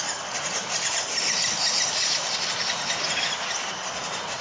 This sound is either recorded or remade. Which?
recorded